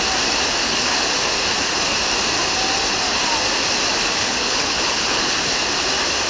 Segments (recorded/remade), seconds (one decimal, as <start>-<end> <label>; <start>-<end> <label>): 0.0-0.6 recorded; 0.6-1.1 remade; 1.1-4.2 recorded; 4.2-5.5 remade; 5.5-6.3 recorded